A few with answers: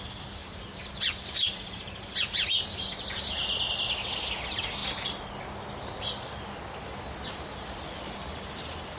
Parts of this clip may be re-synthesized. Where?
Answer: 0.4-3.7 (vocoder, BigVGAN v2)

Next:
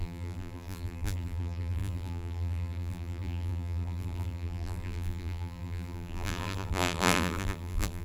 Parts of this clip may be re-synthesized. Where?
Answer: 0.0-8.0 (vocoder, BigVGAN v2)

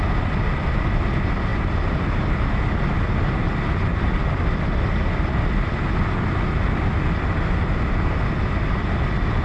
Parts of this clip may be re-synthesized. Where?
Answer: none

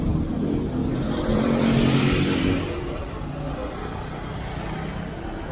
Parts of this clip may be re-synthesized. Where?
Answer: 0.8-3.0 (vocoder, BigVGAN v2)

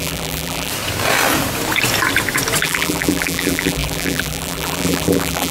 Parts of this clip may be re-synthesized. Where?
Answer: 0.0-0.7 (vocoder, BigVGAN v2); 2.6-5.5